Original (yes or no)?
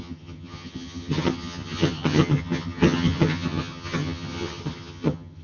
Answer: no